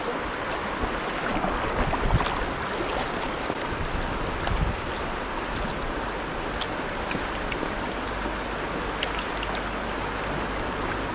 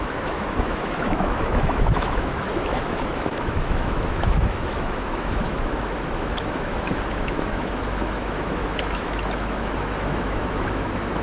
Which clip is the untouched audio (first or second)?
first